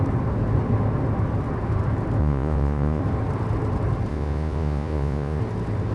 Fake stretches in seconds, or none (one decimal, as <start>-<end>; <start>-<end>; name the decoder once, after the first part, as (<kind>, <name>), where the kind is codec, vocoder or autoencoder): 2.2-3.0 (vocoder, Vocos); 4.1-5.4